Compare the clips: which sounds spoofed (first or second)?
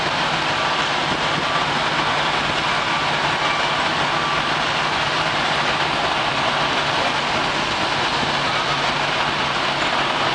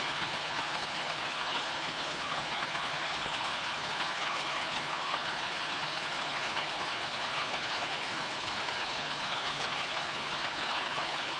second